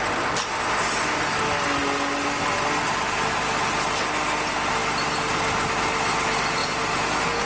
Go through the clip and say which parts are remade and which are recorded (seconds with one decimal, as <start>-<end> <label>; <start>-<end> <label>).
0.0-6.6 recorded; 6.6-7.5 remade